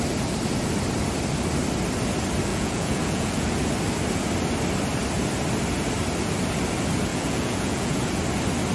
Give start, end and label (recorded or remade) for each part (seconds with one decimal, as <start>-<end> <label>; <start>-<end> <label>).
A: 0.0-2.5 recorded; 2.5-3.5 remade; 3.5-7.1 recorded; 7.1-8.2 remade; 8.2-8.7 recorded